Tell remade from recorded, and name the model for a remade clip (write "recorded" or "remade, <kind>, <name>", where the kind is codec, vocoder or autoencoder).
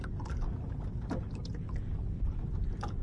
recorded